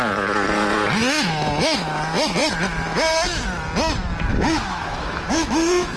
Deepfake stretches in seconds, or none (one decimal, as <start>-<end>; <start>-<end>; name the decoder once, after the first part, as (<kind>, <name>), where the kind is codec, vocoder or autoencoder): 4.3-6.0 (autoencoder, DAC-VAE)